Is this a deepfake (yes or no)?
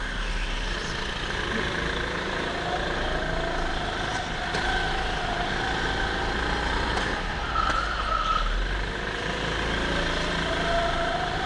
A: no